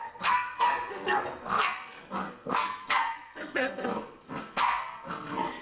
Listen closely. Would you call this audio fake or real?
fake